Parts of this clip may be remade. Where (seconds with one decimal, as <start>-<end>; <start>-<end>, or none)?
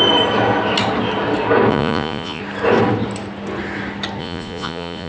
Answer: 1.7-2.4; 4.2-5.1